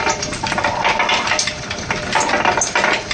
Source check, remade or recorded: recorded